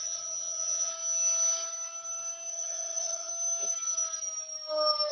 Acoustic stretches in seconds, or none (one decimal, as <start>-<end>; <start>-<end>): 0.9-2.5; 3.3-5.1